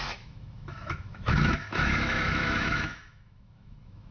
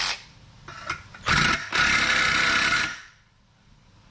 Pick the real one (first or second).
second